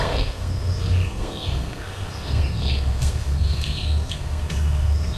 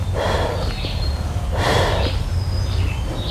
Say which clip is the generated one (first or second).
first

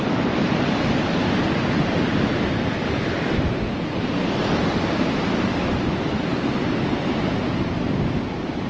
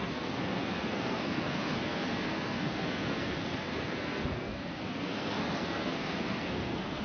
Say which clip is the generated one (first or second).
second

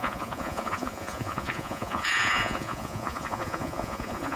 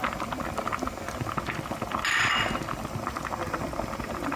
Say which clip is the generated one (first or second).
first